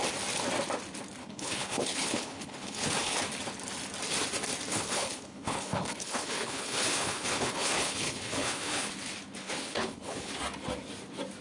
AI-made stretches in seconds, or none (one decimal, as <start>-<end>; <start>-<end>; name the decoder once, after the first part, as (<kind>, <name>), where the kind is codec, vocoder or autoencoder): 1.2-3.2 (codec, HILCodec); 4.7-8.9; 9.4-10.3